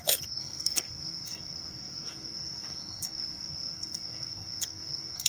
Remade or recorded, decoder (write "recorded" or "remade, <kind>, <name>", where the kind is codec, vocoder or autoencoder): remade, codec, SNAC